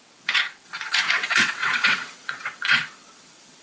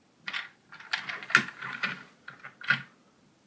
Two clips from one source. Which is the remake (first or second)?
first